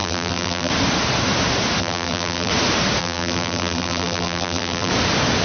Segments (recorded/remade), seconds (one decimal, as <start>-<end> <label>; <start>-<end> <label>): 0.0-0.7 remade; 0.7-1.8 recorded; 1.8-2.5 remade; 2.5-3.0 recorded; 3.0-4.9 remade; 4.9-5.4 recorded